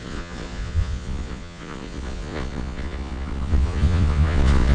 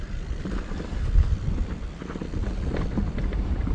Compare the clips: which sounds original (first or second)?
second